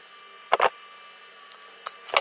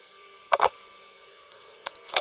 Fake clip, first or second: second